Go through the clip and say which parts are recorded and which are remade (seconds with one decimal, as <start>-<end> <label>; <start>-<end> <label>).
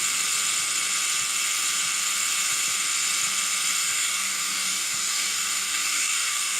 0.0-3.8 recorded; 3.8-6.6 remade